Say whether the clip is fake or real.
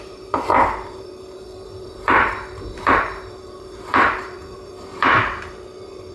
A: fake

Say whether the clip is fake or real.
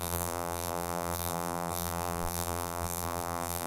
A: fake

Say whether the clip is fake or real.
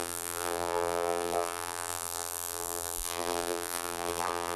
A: fake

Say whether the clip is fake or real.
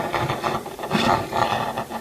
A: fake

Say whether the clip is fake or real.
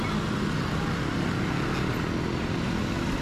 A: real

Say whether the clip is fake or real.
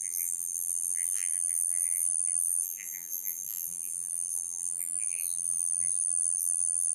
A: fake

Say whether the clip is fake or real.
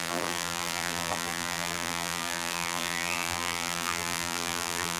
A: fake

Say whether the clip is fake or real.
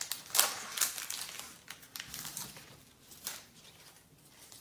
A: fake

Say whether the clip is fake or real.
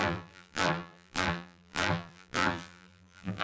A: fake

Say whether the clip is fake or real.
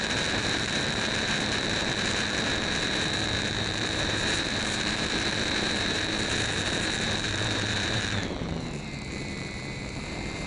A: fake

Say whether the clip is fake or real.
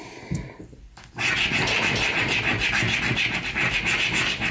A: fake